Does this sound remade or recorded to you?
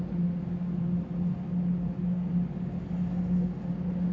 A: recorded